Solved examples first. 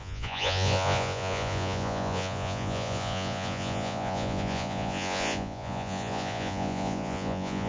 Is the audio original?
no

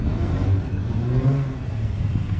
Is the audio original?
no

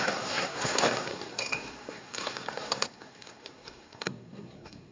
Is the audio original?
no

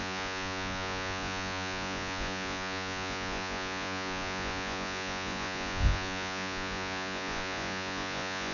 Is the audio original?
no